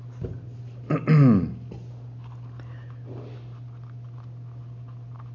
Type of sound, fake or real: real